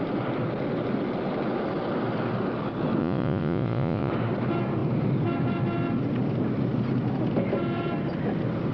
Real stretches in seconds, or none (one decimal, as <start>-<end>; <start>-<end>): 0.0-3.0; 4.1-8.7